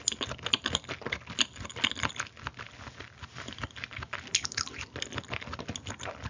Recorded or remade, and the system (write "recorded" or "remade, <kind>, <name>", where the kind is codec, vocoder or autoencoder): recorded